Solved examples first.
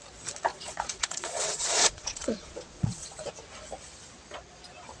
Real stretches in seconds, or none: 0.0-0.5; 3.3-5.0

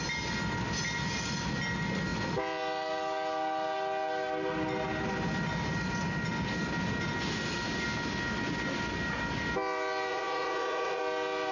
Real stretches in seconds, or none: 0.0-10.1; 11.0-11.5

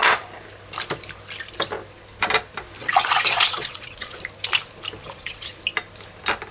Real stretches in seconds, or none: 0.0-2.8; 4.2-5.0; 5.6-6.5

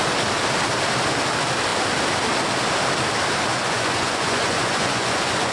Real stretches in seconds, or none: 0.0-3.5

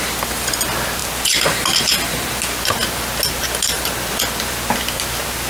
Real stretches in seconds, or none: 0.0-5.5

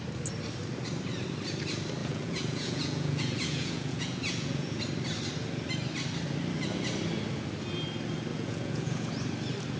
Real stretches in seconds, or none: 0.0-2.0; 4.8-8.3; 9.1-9.8

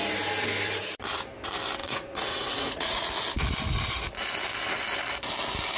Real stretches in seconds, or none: 0.0-1.8; 3.1-5.8